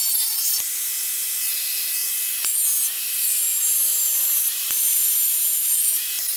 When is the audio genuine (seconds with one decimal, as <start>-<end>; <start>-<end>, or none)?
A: 0.0-3.9; 6.0-6.4